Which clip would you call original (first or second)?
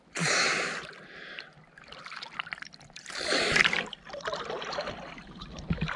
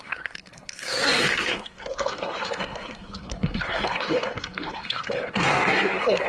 first